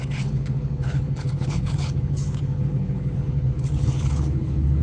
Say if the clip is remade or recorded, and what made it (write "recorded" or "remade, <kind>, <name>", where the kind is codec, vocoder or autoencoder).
remade, codec, HILCodec